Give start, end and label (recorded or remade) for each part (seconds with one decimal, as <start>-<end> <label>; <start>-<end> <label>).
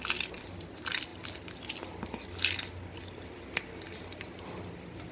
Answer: 0.0-5.1 recorded